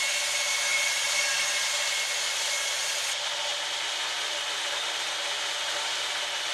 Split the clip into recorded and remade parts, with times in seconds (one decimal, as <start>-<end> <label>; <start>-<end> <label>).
0.0-0.7 recorded; 0.7-1.2 remade; 1.2-6.5 recorded